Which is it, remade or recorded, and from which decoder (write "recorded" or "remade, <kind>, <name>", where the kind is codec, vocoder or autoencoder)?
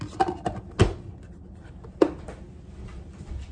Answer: recorded